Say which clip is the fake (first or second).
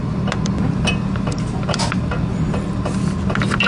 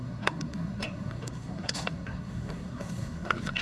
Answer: second